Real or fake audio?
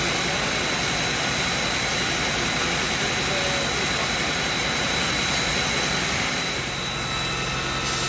real